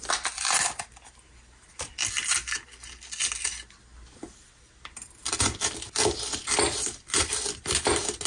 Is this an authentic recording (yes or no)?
yes